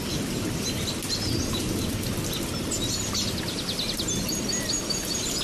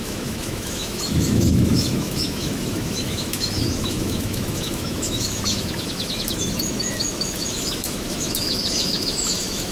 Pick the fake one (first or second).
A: second